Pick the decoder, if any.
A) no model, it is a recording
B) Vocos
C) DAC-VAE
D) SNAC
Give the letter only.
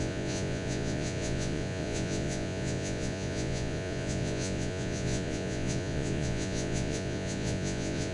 B